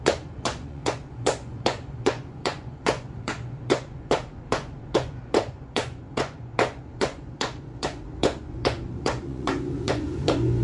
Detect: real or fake fake